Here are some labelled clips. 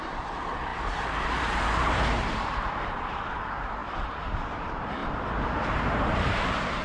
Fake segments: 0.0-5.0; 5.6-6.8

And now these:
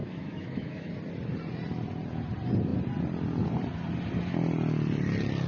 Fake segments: 0.0-0.9

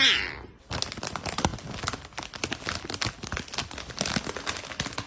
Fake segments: none

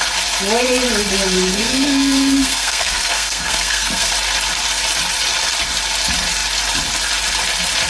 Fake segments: 1.5-4.1

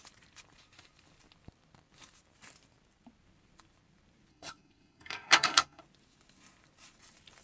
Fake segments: 4.3-5.8